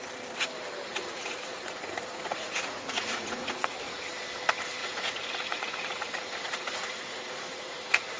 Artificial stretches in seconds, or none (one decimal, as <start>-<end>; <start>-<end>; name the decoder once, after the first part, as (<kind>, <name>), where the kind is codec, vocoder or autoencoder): 0.9-4.0 (vocoder, Vocos); 4.8-8.2